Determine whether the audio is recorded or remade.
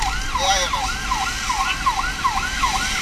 recorded